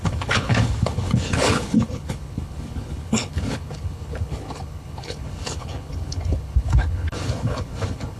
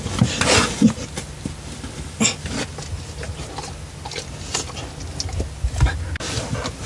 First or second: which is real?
second